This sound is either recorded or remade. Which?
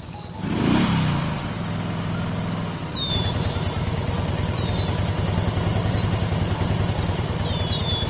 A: recorded